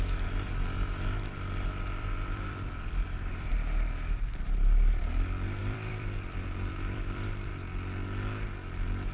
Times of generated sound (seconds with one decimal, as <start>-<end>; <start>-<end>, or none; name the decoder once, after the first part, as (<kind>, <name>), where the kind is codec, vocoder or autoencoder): 2.0-3.5 (vocoder, BigVGAN v2); 5.6-7.5